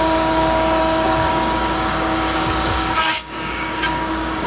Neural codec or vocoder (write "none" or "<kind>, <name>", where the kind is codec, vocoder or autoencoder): codec, DAC